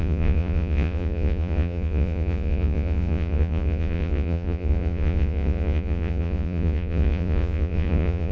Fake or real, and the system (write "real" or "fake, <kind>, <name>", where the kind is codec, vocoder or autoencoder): fake, vocoder, Vocos